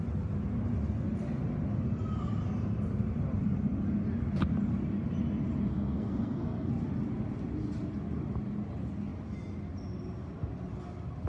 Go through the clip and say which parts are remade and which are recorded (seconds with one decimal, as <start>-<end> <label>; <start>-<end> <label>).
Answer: 0.0-5.7 recorded; 5.7-6.7 remade; 6.7-11.3 recorded

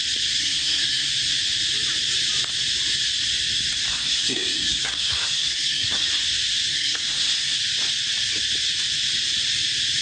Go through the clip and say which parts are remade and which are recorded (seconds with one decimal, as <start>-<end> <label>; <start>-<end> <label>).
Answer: 0.0-0.4 recorded; 0.4-1.1 remade; 1.1-3.9 recorded; 3.9-6.1 remade; 6.1-6.7 recorded; 6.7-7.6 remade; 7.6-10.0 recorded

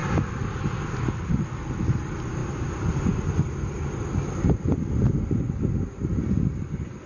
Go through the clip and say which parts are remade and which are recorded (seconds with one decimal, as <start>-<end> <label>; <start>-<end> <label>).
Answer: 0.0-7.1 recorded

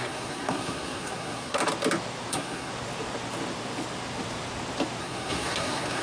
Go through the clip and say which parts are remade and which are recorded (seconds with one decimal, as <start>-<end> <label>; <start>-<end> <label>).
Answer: 0.0-1.6 remade; 1.6-2.3 recorded; 2.3-2.7 remade; 2.7-5.0 recorded; 5.0-6.0 remade

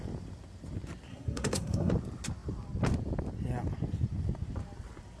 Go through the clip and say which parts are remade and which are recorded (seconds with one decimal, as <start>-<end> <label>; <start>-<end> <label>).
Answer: 0.0-1.1 recorded; 1.1-1.9 remade; 1.9-5.2 recorded

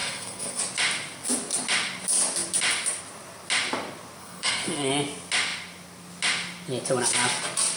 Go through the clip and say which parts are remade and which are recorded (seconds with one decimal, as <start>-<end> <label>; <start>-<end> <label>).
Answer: 0.0-0.6 remade; 0.6-4.2 recorded; 4.2-4.9 remade; 4.9-7.8 recorded

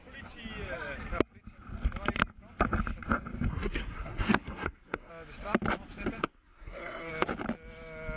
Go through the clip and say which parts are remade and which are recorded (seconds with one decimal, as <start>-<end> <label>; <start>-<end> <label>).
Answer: 0.0-3.5 recorded; 3.5-5.1 remade; 5.1-6.2 recorded; 6.2-7.1 remade; 7.1-8.2 recorded

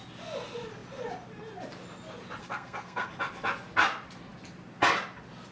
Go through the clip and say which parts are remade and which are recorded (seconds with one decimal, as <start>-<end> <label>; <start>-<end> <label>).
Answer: 0.0-2.4 recorded; 2.4-3.1 remade; 3.1-5.5 recorded